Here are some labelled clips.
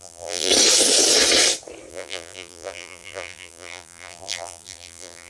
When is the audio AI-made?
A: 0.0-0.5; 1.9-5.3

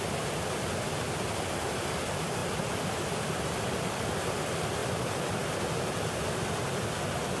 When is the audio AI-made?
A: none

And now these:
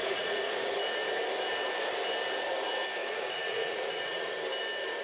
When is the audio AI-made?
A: 0.0-0.7; 3.0-4.3

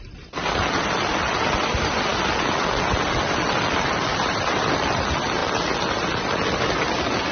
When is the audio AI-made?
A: 4.1-4.6

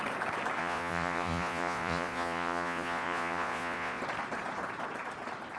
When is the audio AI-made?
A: 0.6-4.0

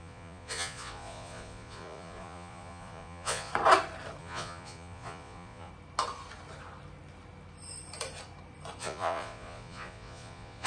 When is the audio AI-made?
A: 0.0-3.5; 4.2-5.7; 8.8-10.7